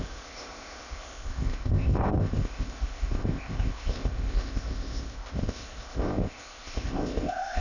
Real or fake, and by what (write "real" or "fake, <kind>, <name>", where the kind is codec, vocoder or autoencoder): fake, codec, ZipCodec